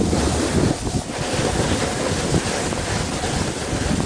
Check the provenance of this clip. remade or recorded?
recorded